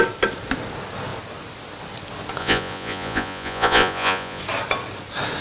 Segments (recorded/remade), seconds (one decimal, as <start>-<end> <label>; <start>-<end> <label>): 0.0-2.4 recorded; 2.4-4.4 remade; 4.4-5.4 recorded